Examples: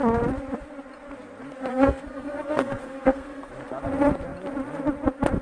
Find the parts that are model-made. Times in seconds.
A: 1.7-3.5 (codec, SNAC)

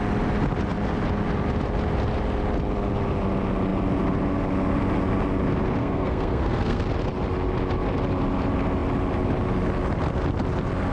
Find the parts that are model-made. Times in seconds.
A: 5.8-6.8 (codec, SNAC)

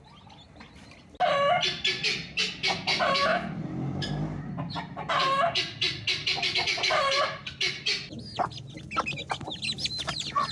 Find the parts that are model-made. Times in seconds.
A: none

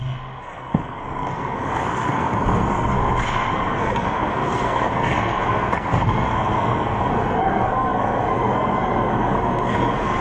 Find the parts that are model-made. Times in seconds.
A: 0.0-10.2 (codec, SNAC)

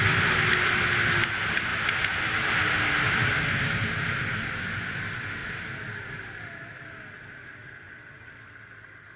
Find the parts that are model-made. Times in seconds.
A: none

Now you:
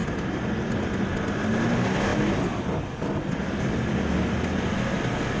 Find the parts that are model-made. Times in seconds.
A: none